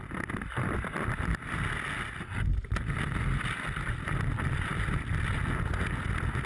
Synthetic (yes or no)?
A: no